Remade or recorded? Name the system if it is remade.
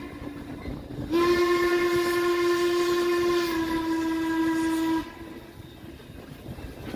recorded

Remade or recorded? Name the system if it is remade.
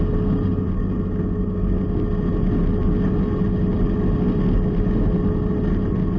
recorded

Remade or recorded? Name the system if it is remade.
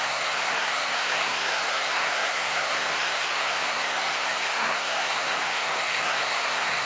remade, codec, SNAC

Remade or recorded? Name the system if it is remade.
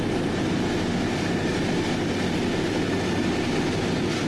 recorded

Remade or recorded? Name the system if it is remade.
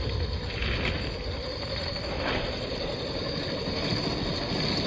recorded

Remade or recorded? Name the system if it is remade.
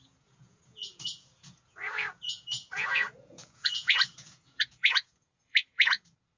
remade, vocoder, Vocos